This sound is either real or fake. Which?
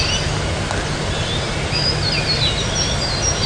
real